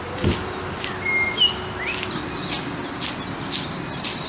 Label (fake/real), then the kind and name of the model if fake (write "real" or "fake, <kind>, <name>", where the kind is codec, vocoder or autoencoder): real